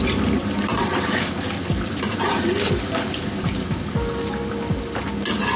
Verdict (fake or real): real